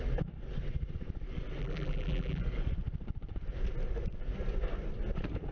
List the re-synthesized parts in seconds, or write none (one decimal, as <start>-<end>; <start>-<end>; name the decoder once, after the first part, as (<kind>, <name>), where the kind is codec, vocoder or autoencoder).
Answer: 1.6-2.4 (vocoder, BigVGAN v2)